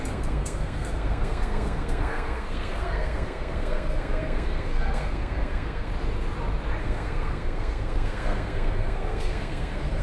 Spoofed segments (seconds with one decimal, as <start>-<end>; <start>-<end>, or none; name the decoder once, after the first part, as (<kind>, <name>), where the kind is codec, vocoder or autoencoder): 0.0-5.9 (codec, SNAC); 6.8-10.0